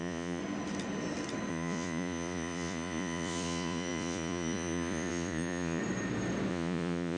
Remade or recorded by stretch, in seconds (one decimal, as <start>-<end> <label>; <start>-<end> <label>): 0.0-0.4 remade; 0.4-1.5 recorded; 1.5-5.8 remade; 5.8-6.5 recorded; 6.5-7.2 remade